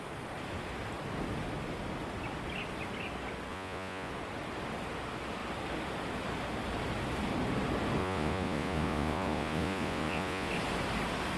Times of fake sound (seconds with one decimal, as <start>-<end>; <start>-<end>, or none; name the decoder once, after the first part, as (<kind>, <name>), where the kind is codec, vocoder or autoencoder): 3.5-4.1 (vocoder, Vocos); 8.0-10.5